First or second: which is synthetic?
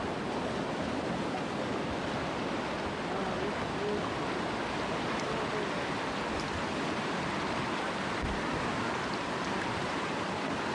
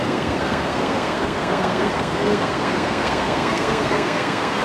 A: second